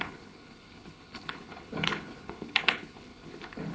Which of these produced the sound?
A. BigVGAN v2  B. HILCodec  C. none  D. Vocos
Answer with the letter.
B